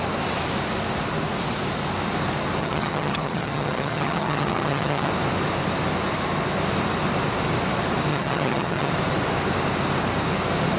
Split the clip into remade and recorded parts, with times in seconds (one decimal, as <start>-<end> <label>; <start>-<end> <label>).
0.0-2.6 recorded; 2.6-5.1 remade; 5.1-8.1 recorded; 8.1-8.9 remade; 8.9-10.8 recorded